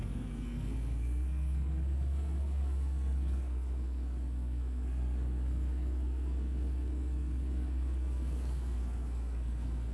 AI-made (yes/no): yes